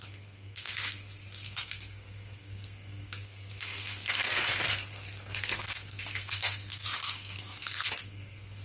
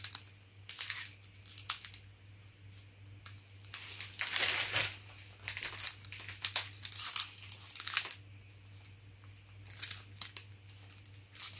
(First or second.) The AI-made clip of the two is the first